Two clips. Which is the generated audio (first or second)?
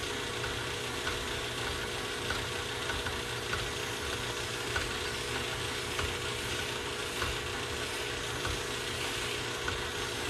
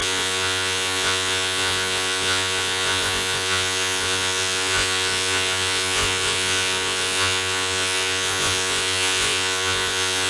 second